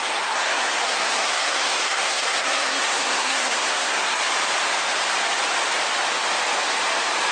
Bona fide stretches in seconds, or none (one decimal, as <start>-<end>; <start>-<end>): 4.2-7.3